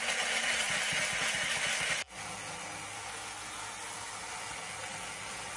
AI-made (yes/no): no